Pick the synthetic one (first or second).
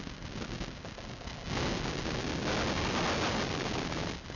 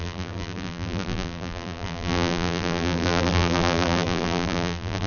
second